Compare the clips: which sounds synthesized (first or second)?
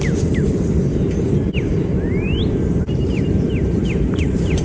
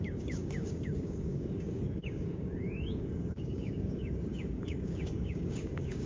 second